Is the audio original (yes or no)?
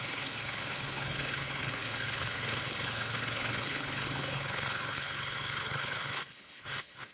no